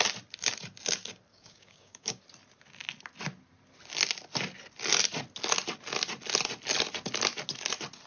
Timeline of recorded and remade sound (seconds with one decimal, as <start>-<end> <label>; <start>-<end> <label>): 0.0-1.3 recorded; 1.3-2.2 remade; 2.2-8.1 recorded